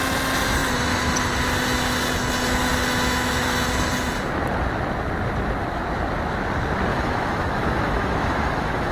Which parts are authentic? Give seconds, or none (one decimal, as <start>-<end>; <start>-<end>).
0.0-6.9